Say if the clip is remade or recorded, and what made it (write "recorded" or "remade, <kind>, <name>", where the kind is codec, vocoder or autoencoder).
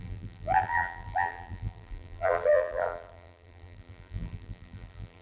remade, vocoder, BigVGAN v2